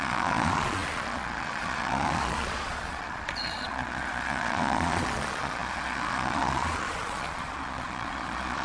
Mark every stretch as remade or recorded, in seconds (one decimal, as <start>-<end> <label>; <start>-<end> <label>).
0.0-8.6 remade